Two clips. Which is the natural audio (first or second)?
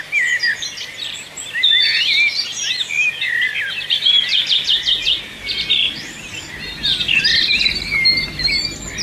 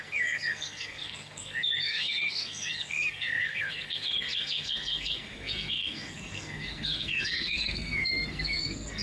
first